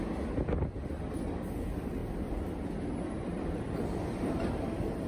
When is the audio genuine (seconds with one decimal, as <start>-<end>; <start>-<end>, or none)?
0.0-2.0